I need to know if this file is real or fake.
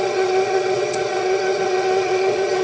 fake